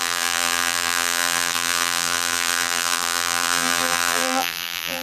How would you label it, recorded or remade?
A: remade